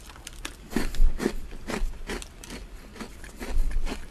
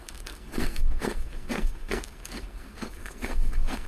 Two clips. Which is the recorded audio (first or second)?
first